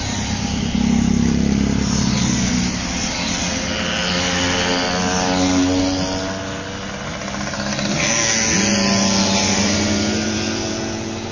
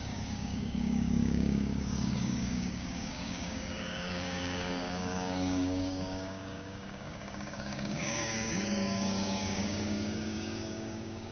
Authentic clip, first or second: first